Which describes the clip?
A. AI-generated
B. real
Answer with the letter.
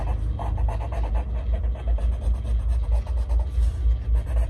B